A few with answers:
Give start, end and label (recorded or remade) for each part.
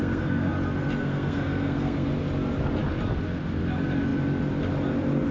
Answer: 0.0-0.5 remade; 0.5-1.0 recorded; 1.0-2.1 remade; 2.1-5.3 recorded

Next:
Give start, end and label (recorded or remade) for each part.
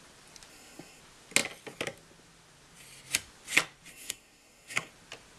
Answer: 0.0-0.5 recorded; 0.5-1.0 remade; 1.0-3.9 recorded; 3.9-4.9 remade; 4.9-5.4 recorded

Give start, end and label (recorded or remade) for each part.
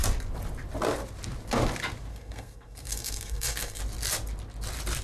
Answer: 0.0-2.1 recorded; 2.1-3.8 remade; 3.8-5.0 recorded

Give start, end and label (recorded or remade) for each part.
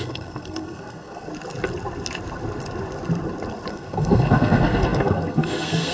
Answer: 0.0-1.3 remade; 1.3-3.7 recorded; 3.7-5.9 remade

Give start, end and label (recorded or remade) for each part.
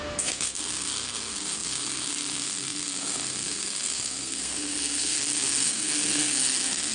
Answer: 0.0-6.9 remade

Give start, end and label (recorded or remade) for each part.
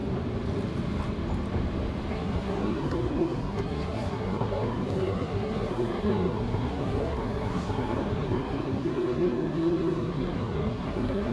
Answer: 0.0-2.1 recorded; 2.1-11.3 remade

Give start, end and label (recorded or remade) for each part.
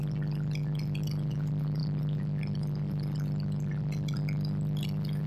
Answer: 0.0-5.3 recorded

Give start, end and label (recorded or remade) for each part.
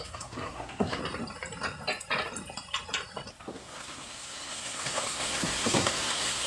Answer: 0.0-1.0 remade; 1.0-3.3 recorded; 3.3-6.5 remade